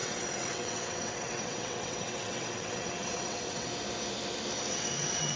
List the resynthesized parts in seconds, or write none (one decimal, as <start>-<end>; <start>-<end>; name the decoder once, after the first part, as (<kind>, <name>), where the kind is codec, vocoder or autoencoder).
0.0-3.7 (vocoder, WaveNeXt); 4.7-5.4